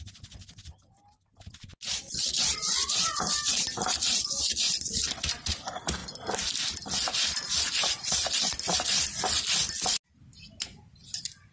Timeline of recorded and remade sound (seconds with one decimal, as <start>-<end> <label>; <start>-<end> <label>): 0.0-11.5 recorded